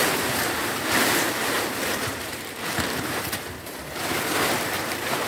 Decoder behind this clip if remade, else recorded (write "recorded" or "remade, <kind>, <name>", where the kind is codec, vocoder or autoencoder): remade, vocoder, BigVGAN v2